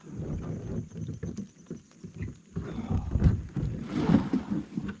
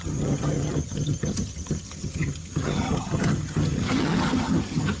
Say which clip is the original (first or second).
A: first